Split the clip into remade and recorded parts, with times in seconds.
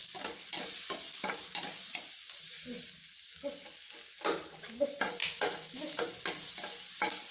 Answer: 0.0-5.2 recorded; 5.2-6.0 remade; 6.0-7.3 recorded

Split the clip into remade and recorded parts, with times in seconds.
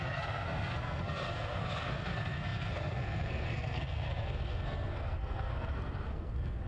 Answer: 0.0-6.7 remade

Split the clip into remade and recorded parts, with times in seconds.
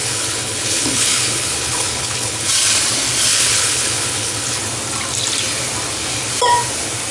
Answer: 0.0-2.5 remade; 2.5-3.3 recorded; 3.3-4.6 remade; 4.6-7.1 recorded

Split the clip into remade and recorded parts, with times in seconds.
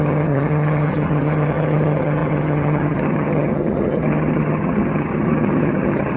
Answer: 0.0-6.2 remade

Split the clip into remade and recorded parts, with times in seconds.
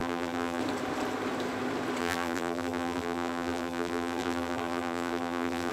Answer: 0.0-0.6 remade; 0.6-2.0 recorded; 2.0-5.7 remade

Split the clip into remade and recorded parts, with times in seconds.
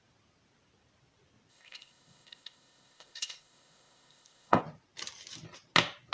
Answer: 0.0-1.5 recorded; 1.5-4.6 remade; 4.6-6.1 recorded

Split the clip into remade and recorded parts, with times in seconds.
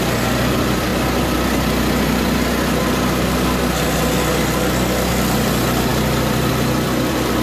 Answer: 0.0-0.9 remade; 0.9-5.1 recorded; 5.1-7.4 remade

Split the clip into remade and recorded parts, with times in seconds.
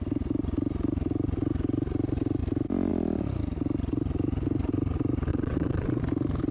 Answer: 0.0-5.3 recorded; 5.3-6.0 remade; 6.0-6.5 recorded